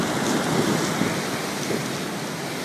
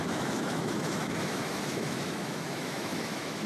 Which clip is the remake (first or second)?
second